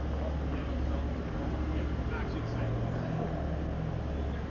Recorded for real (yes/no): yes